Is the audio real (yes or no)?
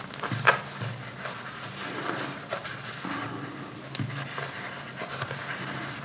yes